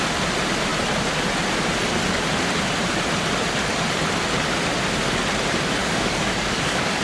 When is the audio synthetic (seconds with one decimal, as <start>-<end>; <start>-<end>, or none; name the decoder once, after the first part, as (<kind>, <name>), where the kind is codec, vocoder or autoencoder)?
5.8-7.0 (codec, DAC)